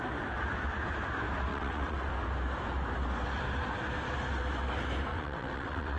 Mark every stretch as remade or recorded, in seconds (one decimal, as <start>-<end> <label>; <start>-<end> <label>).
0.0-1.5 recorded; 1.5-2.1 remade; 2.1-5.1 recorded; 5.1-6.0 remade